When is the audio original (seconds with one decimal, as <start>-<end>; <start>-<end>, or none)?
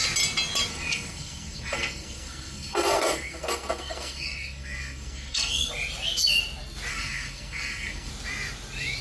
0.0-0.7; 5.7-6.9; 8.1-9.0